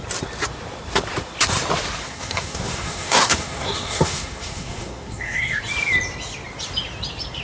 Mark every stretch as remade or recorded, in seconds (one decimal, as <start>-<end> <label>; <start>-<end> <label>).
0.0-2.0 recorded; 2.0-5.6 remade; 5.6-7.4 recorded